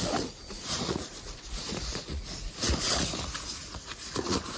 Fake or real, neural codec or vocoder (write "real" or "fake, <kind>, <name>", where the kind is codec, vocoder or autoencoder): fake, vocoder, Vocos